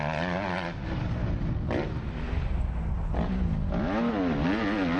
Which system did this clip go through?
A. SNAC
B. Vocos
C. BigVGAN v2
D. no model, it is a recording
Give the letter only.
D